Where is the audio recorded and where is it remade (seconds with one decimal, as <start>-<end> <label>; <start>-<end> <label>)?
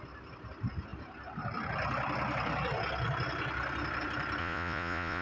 0.0-4.4 recorded; 4.4-5.2 remade